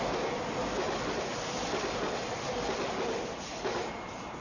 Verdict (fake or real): real